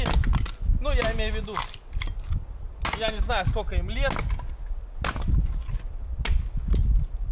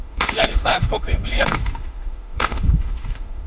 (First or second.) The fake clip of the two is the second